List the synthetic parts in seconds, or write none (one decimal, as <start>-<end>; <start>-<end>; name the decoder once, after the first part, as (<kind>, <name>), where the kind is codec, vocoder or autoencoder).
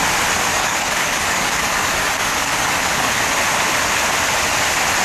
0.5-3.1 (codec, DAC)